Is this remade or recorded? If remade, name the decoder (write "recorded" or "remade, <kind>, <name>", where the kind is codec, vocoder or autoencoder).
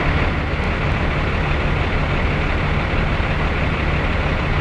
recorded